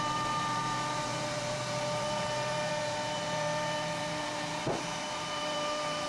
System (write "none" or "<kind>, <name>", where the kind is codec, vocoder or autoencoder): vocoder, BigVGAN v2